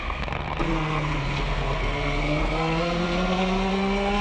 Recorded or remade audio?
remade